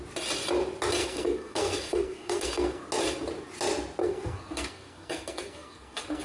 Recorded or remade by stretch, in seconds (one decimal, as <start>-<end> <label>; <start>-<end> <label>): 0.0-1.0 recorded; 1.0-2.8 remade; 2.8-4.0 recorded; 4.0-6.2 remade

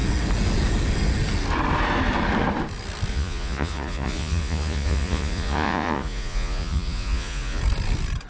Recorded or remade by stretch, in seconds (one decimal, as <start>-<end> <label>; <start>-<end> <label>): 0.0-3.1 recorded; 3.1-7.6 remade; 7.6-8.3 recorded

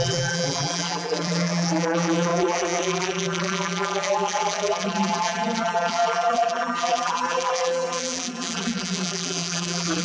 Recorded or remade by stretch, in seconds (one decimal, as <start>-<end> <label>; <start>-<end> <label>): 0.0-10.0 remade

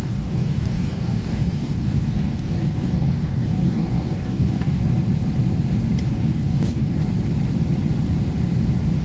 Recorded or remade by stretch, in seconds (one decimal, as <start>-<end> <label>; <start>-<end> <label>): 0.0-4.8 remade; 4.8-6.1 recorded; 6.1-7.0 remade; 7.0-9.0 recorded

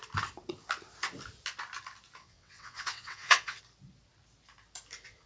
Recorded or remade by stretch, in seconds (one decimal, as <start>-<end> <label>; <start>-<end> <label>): 0.0-2.2 recorded; 2.2-3.6 remade; 3.6-5.3 recorded